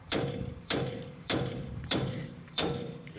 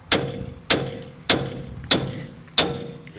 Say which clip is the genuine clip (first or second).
second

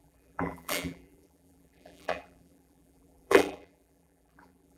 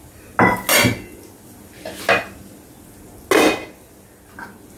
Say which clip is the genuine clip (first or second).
second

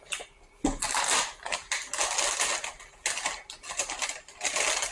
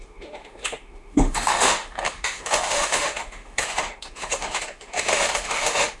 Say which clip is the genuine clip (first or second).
first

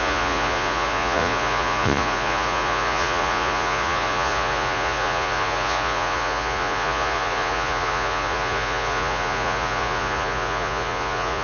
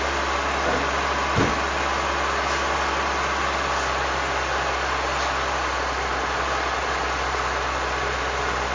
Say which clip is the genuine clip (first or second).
second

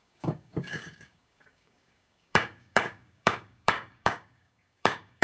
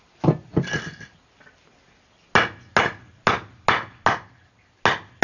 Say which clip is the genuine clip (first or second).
second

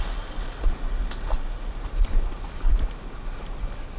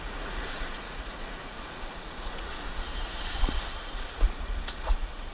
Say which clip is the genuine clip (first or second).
first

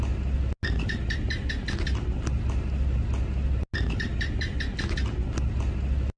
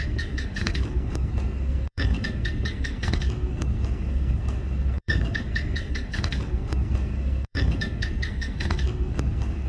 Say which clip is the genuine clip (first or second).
first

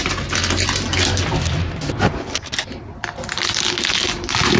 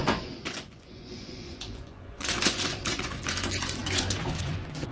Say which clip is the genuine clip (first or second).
first